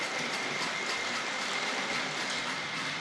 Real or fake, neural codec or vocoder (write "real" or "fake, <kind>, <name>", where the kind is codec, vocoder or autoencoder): real